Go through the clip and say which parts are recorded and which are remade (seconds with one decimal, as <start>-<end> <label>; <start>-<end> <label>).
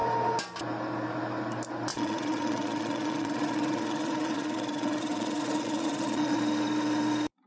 0.0-1.9 recorded; 1.9-6.4 remade; 6.4-7.5 recorded